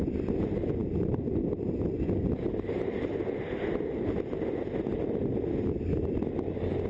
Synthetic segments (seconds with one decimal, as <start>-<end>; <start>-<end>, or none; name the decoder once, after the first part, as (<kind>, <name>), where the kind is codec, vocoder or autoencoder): none